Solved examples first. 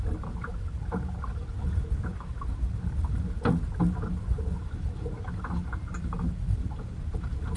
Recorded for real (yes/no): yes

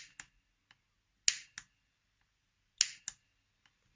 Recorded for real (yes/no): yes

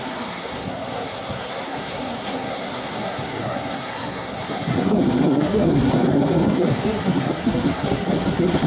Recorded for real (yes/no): no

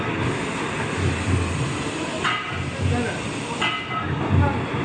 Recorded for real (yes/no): yes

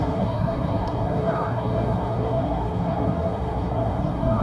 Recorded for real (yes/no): no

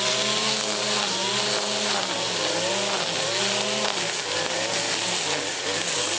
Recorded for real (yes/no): yes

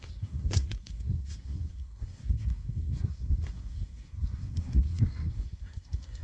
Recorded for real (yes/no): no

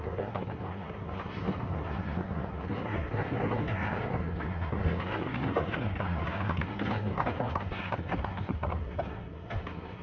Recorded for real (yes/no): no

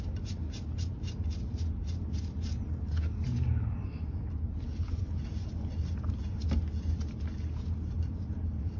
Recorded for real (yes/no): yes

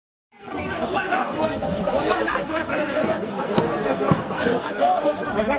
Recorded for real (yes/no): no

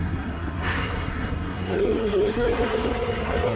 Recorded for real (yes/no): no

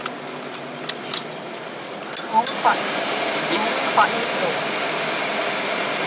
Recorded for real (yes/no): yes